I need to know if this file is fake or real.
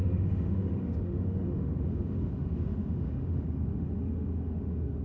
fake